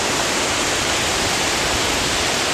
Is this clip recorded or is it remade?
recorded